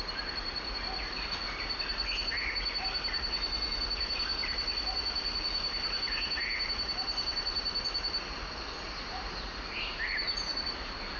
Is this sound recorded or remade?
recorded